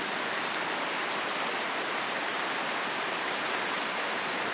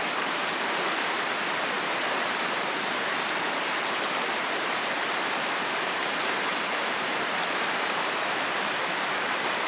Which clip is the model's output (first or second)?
second